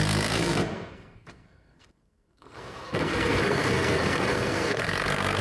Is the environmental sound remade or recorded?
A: remade